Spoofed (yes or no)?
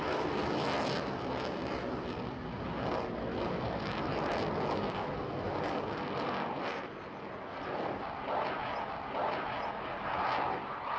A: no